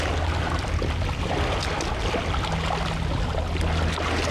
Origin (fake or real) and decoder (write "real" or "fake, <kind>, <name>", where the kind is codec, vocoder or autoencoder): real